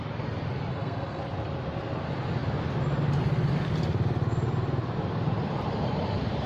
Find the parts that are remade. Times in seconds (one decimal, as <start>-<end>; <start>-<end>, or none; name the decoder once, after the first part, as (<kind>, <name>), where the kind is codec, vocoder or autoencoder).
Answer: 0.7-1.2 (codec, SNAC)